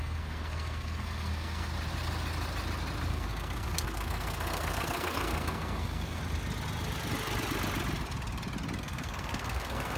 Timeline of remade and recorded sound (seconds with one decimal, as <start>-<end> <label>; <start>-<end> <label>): 0.0-1.7 remade; 1.7-3.1 recorded; 3.1-6.2 remade; 6.2-8.8 recorded; 8.8-10.0 remade